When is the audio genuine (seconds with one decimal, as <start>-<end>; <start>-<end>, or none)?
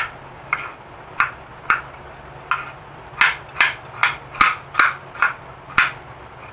0.0-6.5